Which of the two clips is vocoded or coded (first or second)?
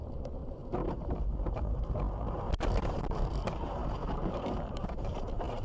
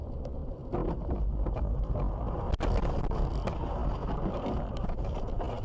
first